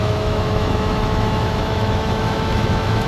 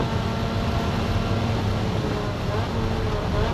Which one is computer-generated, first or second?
first